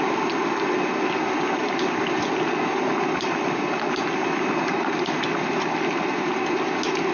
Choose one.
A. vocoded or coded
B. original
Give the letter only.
B